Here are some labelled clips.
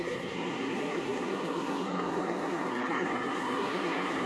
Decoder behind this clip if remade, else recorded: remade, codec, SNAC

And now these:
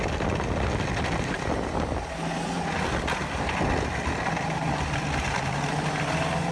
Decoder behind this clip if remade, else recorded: recorded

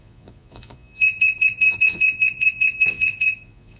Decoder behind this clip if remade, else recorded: remade, vocoder, Vocos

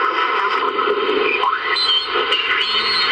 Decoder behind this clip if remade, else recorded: recorded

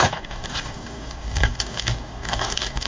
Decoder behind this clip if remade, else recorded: remade, codec, DAC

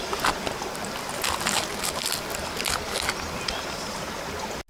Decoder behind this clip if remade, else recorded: recorded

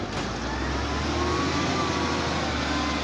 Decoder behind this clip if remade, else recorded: recorded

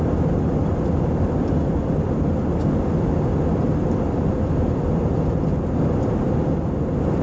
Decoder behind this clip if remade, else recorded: recorded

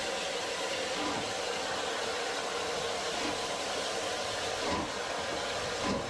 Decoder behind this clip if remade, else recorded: recorded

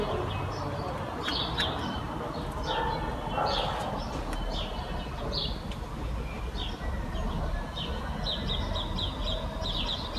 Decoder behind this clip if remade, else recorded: recorded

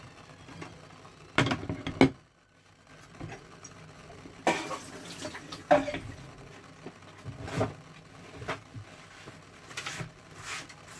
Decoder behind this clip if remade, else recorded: recorded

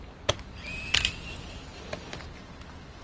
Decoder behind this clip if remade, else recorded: recorded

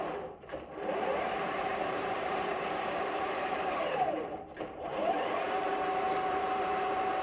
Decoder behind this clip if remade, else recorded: remade, vocoder, BigVGAN v2